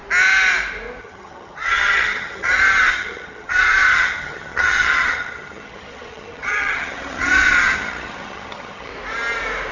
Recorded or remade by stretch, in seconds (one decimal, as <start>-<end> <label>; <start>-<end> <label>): 0.0-1.0 recorded; 1.0-8.9 remade; 8.9-9.7 recorded